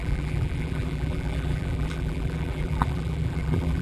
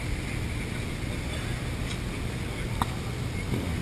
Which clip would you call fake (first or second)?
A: first